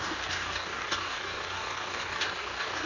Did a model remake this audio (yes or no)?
yes